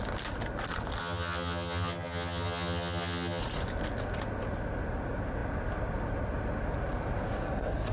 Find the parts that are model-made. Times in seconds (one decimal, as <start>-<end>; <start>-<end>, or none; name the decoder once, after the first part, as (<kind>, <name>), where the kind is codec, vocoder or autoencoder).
1.0-3.4 (vocoder, HiFi-GAN)